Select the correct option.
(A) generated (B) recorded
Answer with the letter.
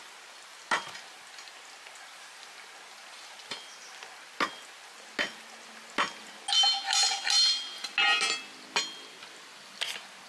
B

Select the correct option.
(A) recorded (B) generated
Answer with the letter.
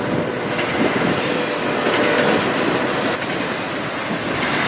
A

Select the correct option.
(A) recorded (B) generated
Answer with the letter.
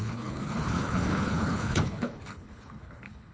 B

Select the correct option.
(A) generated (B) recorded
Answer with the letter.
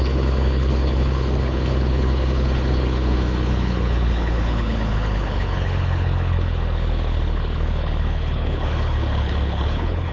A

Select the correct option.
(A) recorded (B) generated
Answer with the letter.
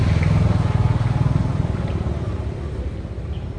A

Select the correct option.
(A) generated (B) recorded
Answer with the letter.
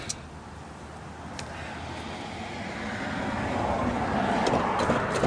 B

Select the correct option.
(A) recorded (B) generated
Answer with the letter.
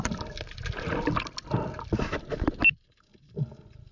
A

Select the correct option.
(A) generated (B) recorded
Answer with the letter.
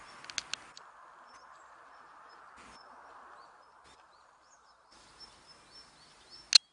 B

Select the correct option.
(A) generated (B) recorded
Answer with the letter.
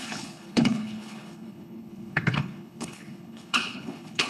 A